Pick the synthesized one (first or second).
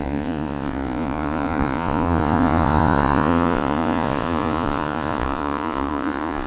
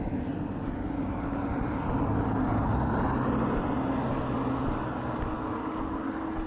first